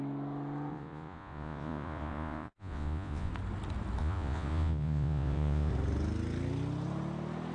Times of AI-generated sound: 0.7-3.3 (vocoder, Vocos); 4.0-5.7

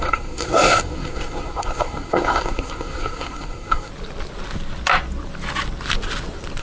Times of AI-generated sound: 0.0-3.9 (codec, SNAC)

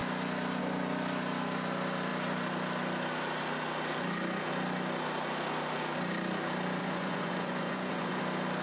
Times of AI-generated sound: 6.8-8.2 (vocoder, Vocos)

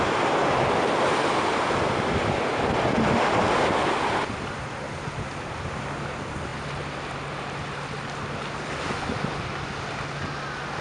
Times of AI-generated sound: none

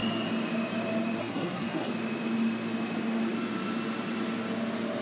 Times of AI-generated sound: 1.2-1.9 (codec, SNAC)

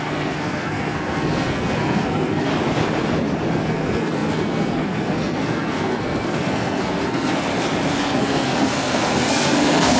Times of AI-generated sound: 0.0-2.5 (codec, SNAC); 3.5-7.5; 8.0-10.0

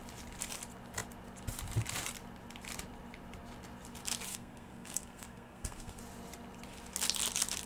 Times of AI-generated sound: 4.3-6.0 (codec, SNAC)